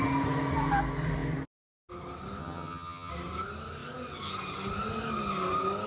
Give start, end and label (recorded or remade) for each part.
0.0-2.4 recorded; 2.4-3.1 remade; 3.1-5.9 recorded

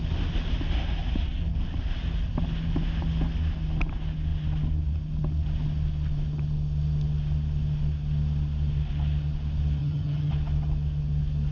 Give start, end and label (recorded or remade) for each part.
0.0-9.8 recorded; 9.8-10.3 remade; 10.3-11.5 recorded

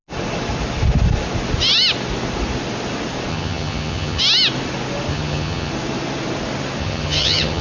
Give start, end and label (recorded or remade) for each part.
0.0-3.3 recorded; 3.3-4.2 remade; 4.2-5.1 recorded; 5.1-5.7 remade; 5.7-6.8 recorded; 6.8-7.6 remade

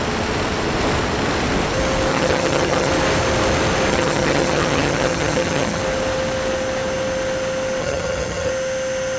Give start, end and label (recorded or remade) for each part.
0.0-2.1 recorded; 2.1-2.9 remade; 2.9-3.9 recorded; 3.9-5.8 remade; 5.8-7.8 recorded; 7.8-8.5 remade; 8.5-9.2 recorded

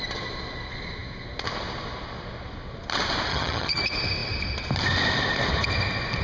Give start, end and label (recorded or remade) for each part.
0.0-3.3 recorded; 3.3-3.8 remade; 3.8-6.2 recorded

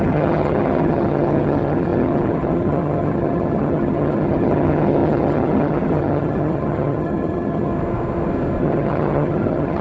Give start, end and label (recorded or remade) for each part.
0.0-7.7 remade; 7.7-8.6 recorded; 8.6-9.8 remade

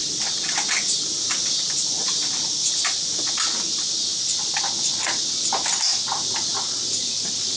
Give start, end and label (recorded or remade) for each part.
0.0-7.6 recorded

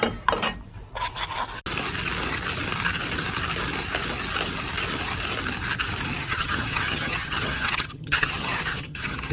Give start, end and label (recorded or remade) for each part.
0.0-6.2 recorded; 6.2-9.3 remade